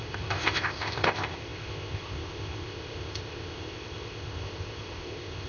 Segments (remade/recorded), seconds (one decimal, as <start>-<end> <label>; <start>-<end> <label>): 0.0-5.5 remade